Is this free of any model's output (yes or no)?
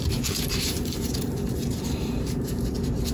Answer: no